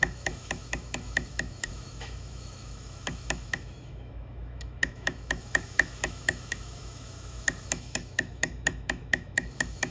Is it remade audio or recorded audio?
remade